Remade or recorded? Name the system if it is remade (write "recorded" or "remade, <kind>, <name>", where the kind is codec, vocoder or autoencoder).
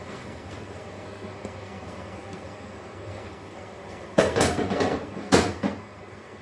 remade, codec, SNAC